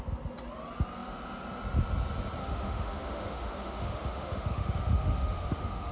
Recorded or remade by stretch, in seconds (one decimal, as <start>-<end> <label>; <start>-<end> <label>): 0.0-2.4 recorded; 2.4-5.9 remade